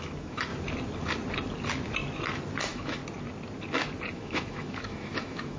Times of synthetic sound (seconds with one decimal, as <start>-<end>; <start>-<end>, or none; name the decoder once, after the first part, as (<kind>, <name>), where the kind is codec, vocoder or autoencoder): 0.0-0.5 (autoencoder, DAC-VAE); 2.6-3.0; 4.1-5.6

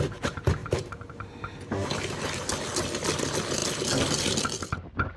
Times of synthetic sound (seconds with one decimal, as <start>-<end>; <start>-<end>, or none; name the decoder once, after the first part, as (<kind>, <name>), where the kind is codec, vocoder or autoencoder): 0.6-1.3 (vocoder, BigVGAN v2)

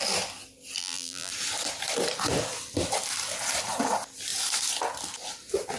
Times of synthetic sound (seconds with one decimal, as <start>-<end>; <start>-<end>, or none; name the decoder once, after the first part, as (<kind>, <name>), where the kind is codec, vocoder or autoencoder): 0.8-1.3 (vocoder, BigVGAN v2)

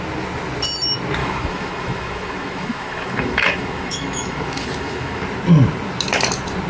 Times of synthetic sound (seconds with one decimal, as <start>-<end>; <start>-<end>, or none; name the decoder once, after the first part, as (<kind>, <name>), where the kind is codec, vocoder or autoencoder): 1.2-5.2 (autoencoder, DAC-VAE)